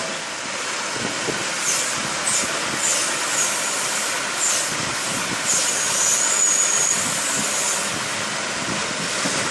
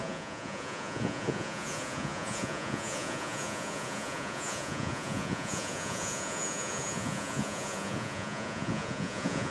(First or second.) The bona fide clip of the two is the first